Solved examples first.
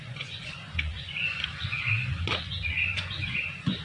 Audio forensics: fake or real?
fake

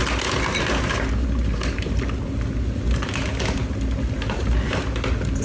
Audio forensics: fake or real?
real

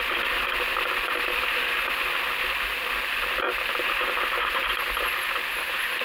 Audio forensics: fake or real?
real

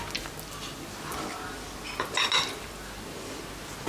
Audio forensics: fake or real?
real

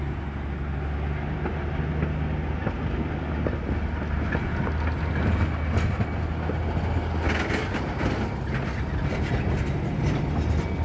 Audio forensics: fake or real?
real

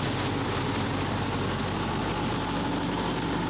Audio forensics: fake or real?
real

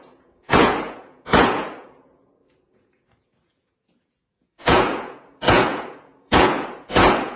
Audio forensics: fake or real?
fake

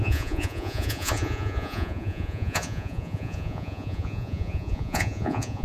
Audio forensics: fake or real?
fake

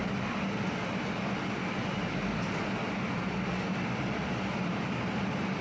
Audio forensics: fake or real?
real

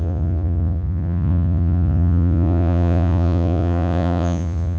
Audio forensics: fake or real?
fake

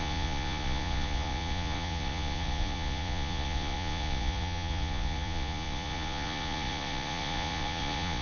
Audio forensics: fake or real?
fake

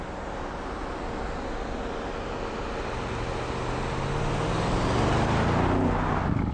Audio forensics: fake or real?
real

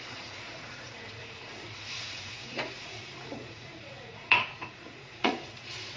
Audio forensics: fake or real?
fake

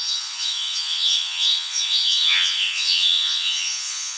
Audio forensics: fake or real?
fake